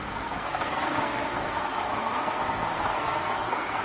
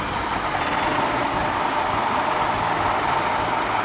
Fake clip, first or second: first